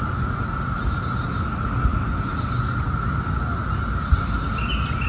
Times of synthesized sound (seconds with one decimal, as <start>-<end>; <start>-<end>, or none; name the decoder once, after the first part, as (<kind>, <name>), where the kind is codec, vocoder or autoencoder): none